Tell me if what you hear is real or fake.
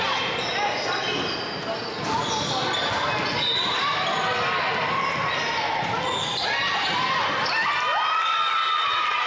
real